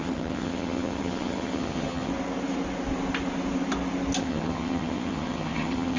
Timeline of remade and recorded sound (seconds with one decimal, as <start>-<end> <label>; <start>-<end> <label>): 0.0-2.1 remade; 2.1-4.2 recorded; 4.2-6.0 remade